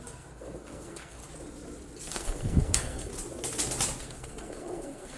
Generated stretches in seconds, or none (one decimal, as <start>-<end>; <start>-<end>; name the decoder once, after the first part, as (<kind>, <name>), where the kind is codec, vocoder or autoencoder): 0.0-1.2 (codec, SNAC); 2.1-3.1; 4.0-5.2